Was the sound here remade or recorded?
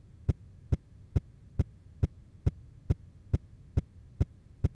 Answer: recorded